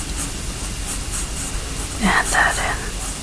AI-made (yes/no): no